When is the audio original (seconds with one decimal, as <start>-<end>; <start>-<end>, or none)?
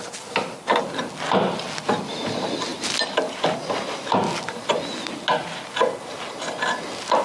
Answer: 0.0-2.7; 4.6-7.2